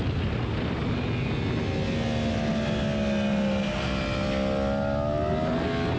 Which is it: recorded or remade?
recorded